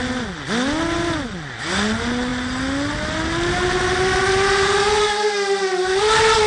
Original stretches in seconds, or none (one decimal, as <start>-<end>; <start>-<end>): 0.0-6.5